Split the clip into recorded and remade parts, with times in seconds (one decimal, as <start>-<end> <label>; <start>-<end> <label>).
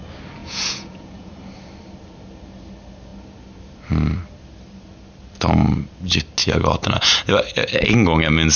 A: 0.0-0.4 recorded; 0.4-1.3 remade; 1.3-6.4 recorded; 6.4-7.3 remade; 7.3-8.6 recorded